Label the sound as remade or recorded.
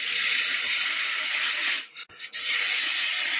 remade